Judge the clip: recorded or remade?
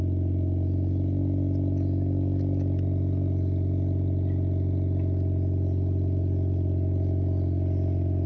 recorded